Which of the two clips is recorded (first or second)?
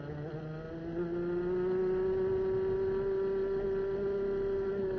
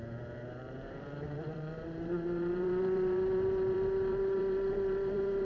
first